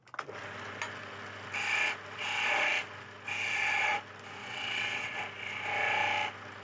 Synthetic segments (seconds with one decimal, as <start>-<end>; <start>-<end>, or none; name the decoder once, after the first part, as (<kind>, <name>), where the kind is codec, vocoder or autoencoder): 4.4-5.2 (vocoder, WaveNeXt)